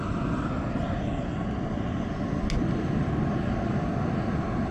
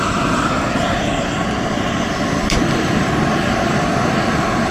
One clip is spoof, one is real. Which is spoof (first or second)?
second